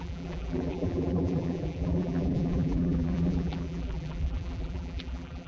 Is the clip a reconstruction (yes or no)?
yes